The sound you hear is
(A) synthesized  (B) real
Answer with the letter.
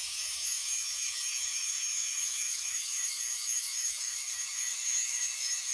A